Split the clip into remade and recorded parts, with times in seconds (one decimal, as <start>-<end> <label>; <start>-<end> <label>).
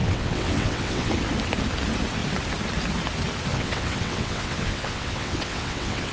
0.0-1.1 remade; 1.1-3.5 recorded; 3.5-6.1 remade